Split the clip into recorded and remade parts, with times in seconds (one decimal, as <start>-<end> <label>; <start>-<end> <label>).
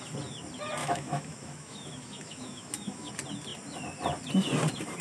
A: 0.0-0.8 recorded; 0.8-3.1 remade; 3.1-5.0 recorded